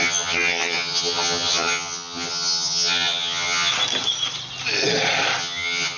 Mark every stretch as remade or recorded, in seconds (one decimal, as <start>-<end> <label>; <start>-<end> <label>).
0.0-3.7 remade; 3.7-5.4 recorded; 5.4-6.0 remade